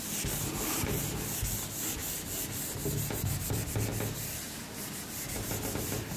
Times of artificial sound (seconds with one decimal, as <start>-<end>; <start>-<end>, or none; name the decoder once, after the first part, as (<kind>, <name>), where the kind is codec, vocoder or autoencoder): none